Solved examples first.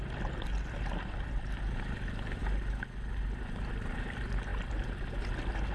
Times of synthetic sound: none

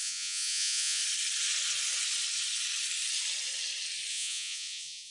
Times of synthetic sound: 0.0-1.0; 4.1-5.1

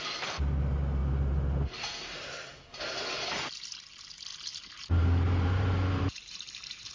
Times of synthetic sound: 4.3-6.9

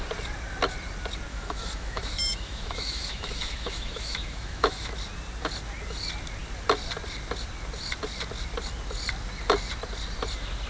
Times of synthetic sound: 1.3-4.9

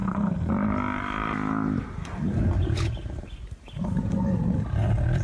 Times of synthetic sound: 0.0-0.5

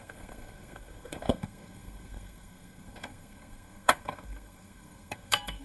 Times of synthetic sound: 0.0-5.6

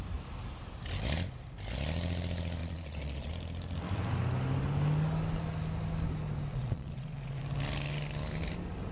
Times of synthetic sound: 2.6-3.3; 6.5-7.4

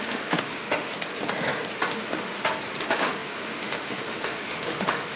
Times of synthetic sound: 0.0-0.9; 1.9-2.3; 2.8-5.2